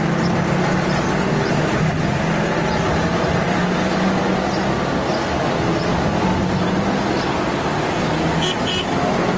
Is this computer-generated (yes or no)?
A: no